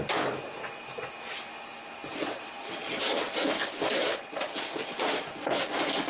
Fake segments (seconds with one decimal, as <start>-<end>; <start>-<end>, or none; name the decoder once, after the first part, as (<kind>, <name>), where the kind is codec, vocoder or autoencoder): 2.1-2.9 (vocoder, Vocos); 4.0-5.6